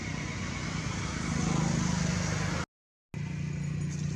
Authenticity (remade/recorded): recorded